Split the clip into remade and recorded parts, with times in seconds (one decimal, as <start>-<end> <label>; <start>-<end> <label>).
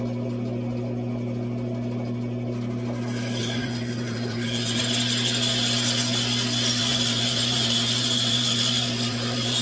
0.0-3.4 recorded; 3.4-4.8 remade; 4.8-6.8 recorded; 6.8-9.6 remade